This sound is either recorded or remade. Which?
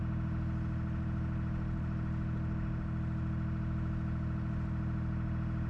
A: recorded